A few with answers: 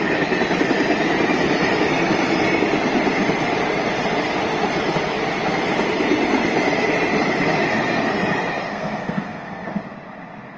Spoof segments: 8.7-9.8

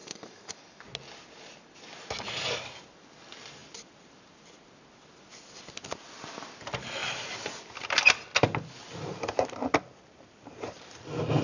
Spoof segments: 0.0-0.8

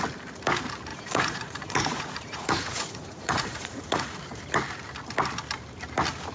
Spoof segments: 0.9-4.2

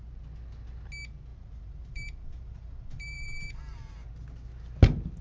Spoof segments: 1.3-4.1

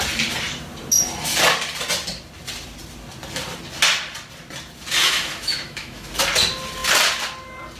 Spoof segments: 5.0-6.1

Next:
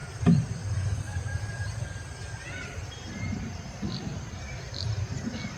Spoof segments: 0.0-0.6; 1.1-4.5

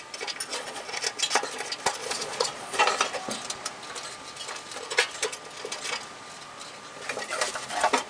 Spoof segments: 0.5-1.0; 2.0-2.8